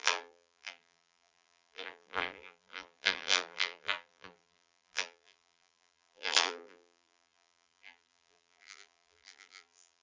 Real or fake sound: fake